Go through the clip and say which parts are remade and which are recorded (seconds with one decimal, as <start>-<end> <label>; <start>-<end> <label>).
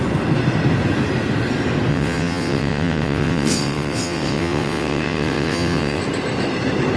0.0-1.9 recorded; 1.9-6.0 remade; 6.0-7.0 recorded